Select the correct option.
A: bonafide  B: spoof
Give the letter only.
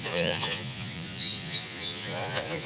B